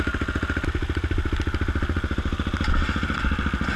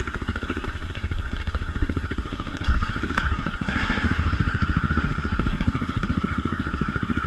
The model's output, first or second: second